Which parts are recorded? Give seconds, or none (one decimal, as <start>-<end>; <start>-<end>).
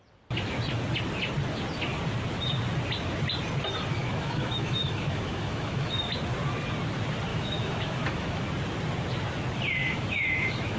0.0-4.0; 6.0-7.3; 8.5-9.8